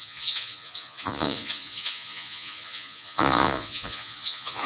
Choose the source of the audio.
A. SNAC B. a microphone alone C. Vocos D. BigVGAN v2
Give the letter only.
C